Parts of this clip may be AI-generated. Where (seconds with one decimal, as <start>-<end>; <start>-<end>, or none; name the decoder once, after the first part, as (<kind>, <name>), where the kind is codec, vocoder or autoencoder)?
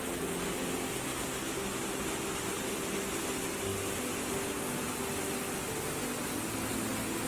none